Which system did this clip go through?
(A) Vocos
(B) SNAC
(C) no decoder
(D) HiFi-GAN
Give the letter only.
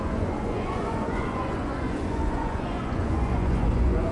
A